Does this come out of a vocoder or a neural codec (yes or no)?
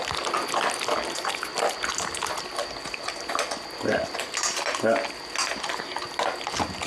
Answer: no